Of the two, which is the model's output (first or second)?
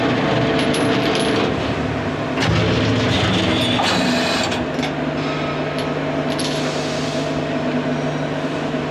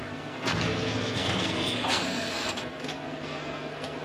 second